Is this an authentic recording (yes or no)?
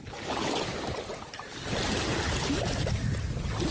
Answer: yes